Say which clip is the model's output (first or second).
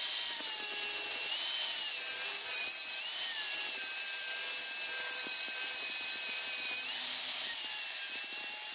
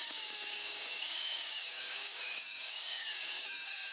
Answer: second